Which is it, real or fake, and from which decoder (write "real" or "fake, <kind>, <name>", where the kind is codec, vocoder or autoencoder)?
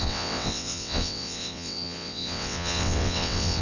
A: fake, vocoder, WaveNeXt